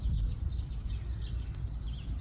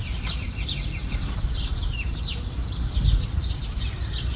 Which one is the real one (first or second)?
first